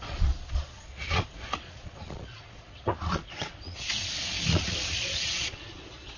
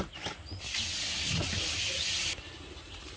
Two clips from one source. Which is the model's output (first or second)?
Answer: first